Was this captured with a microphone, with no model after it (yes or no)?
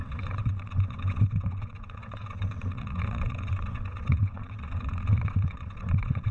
no